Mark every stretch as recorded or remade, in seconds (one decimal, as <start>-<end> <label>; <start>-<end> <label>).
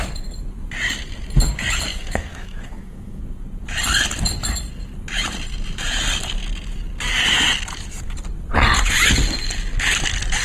0.0-1.9 recorded; 1.9-3.2 remade; 3.2-10.4 recorded